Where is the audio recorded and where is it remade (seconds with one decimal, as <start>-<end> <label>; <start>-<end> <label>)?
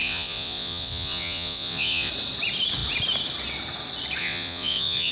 0.0-2.1 remade; 2.1-4.2 recorded; 4.2-5.1 remade